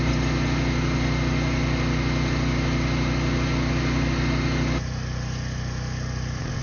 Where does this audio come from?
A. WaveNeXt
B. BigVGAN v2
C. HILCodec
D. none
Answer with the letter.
D